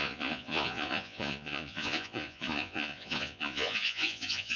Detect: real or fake fake